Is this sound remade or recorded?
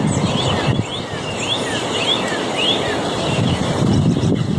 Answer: recorded